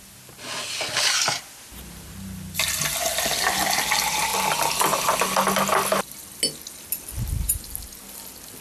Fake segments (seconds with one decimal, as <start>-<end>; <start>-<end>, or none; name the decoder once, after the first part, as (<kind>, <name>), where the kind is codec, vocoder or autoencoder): none